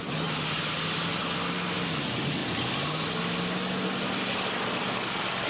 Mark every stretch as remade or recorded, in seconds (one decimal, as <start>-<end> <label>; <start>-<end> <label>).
0.0-5.5 recorded